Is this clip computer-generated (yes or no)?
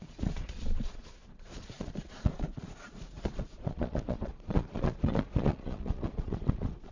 yes